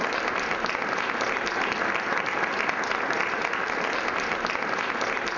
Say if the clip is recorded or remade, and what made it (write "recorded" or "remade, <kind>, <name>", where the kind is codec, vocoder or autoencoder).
recorded